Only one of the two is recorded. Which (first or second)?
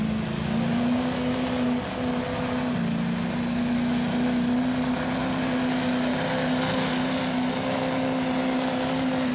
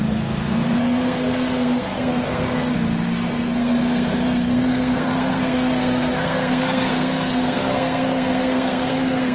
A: first